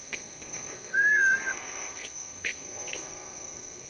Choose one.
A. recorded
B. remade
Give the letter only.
B